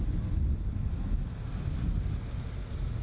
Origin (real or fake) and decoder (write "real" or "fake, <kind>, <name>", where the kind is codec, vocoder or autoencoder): real